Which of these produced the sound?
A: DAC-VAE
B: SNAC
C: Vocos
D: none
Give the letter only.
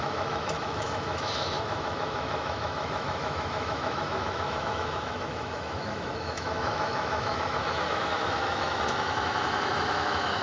A